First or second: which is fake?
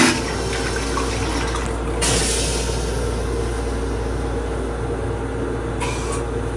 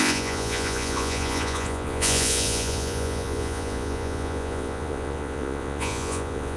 second